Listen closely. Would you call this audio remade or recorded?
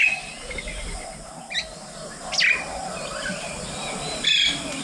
recorded